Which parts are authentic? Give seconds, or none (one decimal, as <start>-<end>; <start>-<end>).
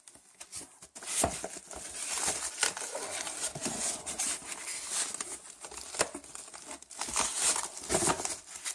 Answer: 0.0-3.6; 4.2-8.7